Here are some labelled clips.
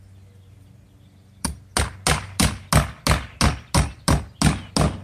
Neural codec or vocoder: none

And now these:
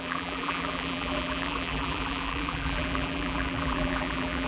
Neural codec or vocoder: vocoder, BigVGAN v2